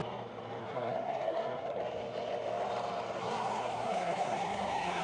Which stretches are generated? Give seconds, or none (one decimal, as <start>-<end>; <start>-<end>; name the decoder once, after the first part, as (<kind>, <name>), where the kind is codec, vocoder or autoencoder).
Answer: 0.6-1.8 (codec, SNAC); 3.2-5.0

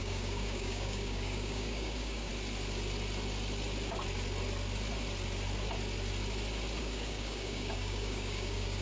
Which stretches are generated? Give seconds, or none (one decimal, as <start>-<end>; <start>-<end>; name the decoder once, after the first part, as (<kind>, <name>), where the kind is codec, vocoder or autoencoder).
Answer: 0.0-2.3 (codec, DAC); 6.8-8.8

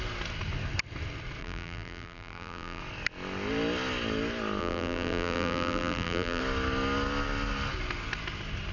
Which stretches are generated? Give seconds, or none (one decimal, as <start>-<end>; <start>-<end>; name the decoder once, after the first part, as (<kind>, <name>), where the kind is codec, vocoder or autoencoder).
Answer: 1.4-2.8 (vocoder, BigVGAN v2); 4.6-6.4

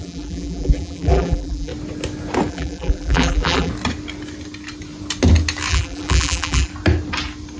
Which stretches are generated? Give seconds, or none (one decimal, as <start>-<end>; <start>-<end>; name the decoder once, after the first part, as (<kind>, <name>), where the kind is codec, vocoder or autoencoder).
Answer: 0.0-1.7 (vocoder, BigVGAN v2); 2.5-3.7; 5.7-6.7

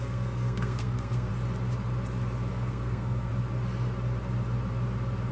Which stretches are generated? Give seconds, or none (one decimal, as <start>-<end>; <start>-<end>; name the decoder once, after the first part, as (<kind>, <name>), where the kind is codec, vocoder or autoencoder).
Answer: 0.0-1.3 (codec, SNAC); 2.5-3.3

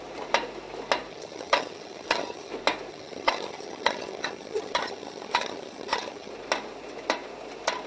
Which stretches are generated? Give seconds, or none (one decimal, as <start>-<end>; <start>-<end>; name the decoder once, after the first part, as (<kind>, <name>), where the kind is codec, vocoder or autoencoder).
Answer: 1.1-2.5 (vocoder, HiFi-GAN); 2.9-6.3

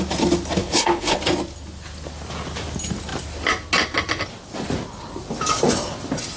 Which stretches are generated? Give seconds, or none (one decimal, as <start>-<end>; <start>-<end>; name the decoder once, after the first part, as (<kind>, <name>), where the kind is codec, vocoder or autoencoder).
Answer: 0.6-1.2 (codec, HILCodec)